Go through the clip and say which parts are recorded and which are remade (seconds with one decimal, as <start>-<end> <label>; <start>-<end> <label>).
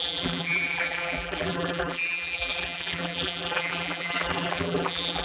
0.0-5.2 remade